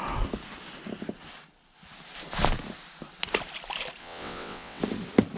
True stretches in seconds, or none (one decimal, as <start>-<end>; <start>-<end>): 0.0-4.0; 4.8-5.4